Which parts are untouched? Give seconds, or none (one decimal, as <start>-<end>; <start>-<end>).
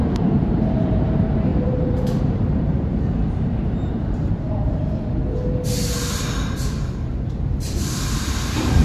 4.8-7.1